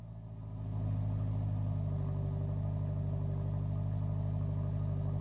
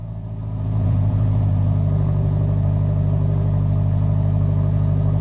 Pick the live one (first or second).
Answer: first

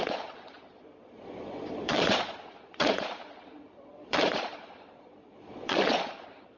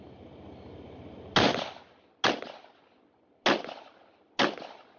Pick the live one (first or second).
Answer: second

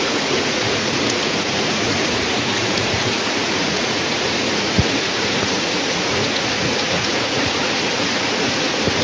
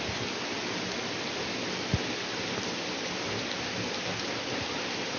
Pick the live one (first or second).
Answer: second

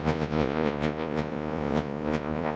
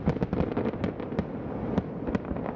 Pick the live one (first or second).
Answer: second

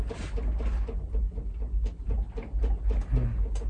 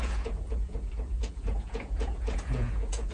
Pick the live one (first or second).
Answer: first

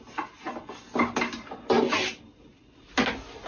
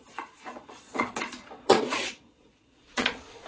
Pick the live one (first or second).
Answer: first